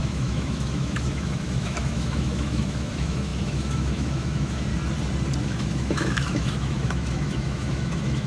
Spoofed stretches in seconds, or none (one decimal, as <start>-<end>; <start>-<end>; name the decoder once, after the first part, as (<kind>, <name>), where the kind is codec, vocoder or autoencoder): 0.0-4.7 (autoencoder, DAC-VAE); 5.4-8.3